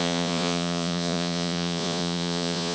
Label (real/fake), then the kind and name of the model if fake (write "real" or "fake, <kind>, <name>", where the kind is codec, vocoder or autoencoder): fake, vocoder, Vocos